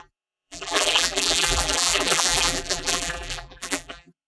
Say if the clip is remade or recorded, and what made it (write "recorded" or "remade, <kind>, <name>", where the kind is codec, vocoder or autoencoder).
remade, vocoder, BigVGAN v2